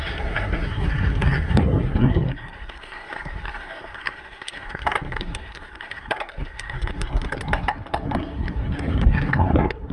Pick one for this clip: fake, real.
fake